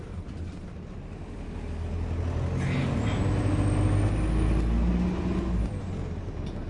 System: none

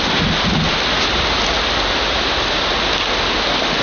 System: none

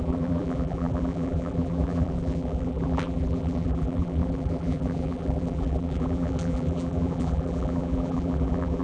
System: vocoder, BigVGAN v2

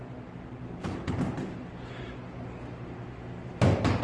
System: none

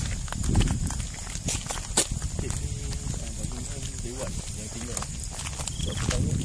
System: none